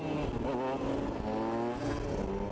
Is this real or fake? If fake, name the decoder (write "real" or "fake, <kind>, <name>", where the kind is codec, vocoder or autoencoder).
real